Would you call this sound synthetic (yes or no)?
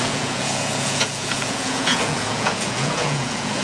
yes